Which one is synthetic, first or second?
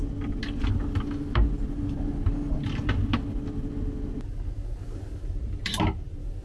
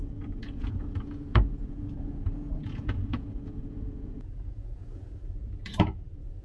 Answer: second